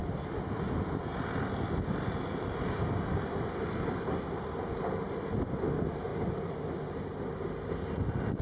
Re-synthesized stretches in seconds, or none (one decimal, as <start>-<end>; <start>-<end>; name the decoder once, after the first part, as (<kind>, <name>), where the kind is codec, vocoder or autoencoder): none